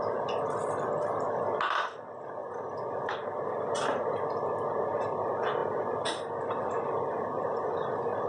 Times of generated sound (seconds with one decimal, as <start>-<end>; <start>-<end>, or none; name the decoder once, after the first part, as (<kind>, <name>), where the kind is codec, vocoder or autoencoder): 2.4-3.7 (vocoder, BigVGAN v2); 5.6-8.3